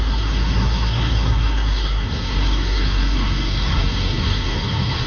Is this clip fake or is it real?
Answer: fake